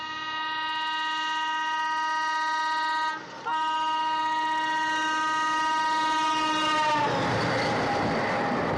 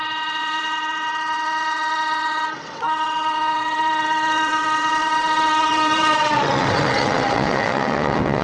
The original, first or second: first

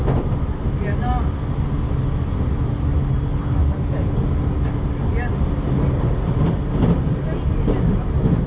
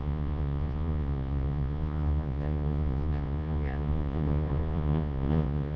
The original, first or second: first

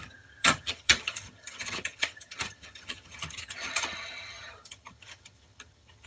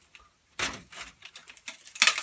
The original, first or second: second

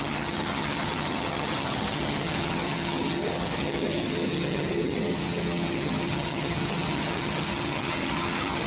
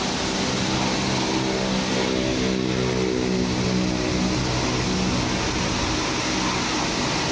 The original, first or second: second